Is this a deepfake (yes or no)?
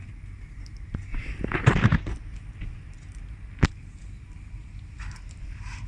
no